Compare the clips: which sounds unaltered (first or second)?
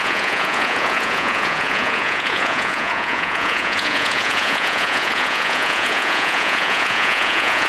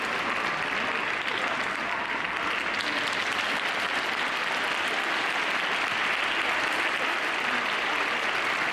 second